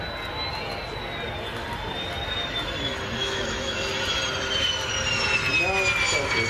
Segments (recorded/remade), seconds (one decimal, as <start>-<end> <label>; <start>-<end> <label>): 0.0-3.2 recorded; 3.2-3.9 remade; 3.9-6.5 recorded